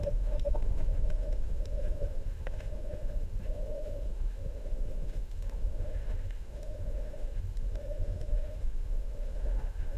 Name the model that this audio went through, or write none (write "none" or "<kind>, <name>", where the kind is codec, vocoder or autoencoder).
autoencoder, DAC-VAE